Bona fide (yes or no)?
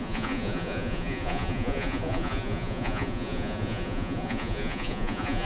no